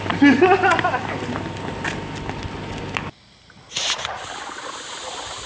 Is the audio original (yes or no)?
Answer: yes